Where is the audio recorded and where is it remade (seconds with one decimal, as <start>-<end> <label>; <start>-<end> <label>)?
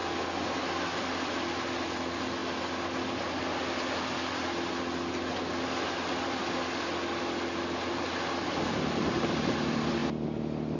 0.0-10.8 recorded